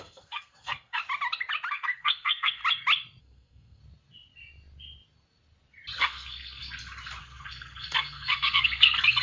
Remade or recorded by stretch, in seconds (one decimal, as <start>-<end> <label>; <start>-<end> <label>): 0.0-1.0 remade; 1.0-1.7 recorded; 1.7-2.6 remade; 2.6-3.2 recorded; 3.2-3.8 remade; 3.8-6.0 recorded; 6.0-6.6 remade; 6.6-7.2 recorded; 7.2-9.2 remade